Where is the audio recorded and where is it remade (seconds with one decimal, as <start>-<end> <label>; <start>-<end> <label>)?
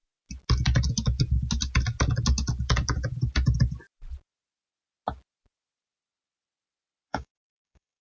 0.0-7.1 recorded; 7.1-8.0 remade